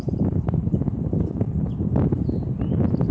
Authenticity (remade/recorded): recorded